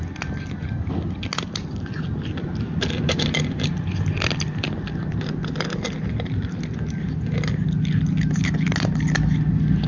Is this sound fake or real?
real